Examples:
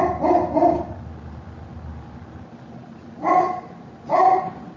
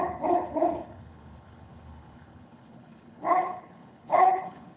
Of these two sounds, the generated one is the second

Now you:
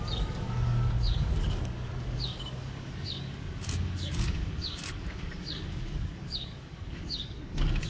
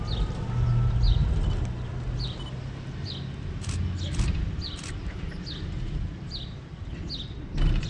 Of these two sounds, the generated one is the first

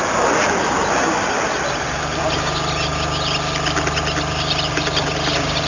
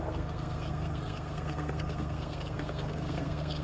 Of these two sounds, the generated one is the second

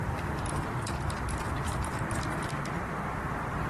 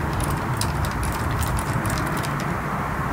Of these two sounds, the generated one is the first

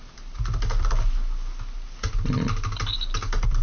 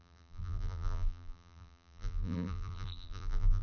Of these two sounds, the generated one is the second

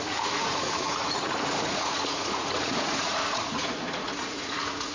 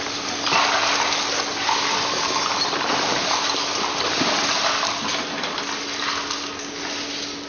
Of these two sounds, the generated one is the first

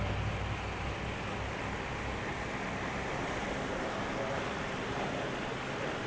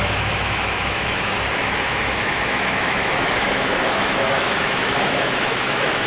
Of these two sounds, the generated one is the second